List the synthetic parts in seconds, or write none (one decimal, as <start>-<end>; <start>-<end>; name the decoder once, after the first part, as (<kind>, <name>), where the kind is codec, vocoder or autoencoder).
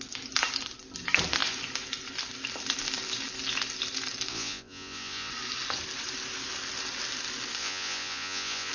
4.3-5.3 (vocoder, Vocos); 7.6-8.7